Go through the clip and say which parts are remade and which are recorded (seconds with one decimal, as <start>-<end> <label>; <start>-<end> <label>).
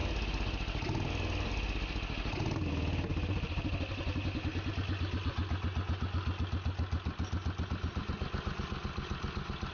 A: 0.0-9.7 recorded